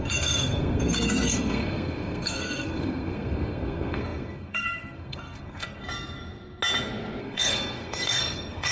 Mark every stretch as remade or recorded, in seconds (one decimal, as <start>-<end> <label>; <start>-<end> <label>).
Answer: 0.0-5.8 remade; 5.8-7.2 recorded; 7.2-8.7 remade